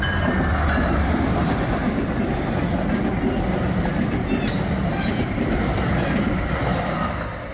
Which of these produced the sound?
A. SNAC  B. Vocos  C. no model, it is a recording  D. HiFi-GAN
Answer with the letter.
C